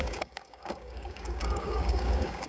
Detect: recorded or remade remade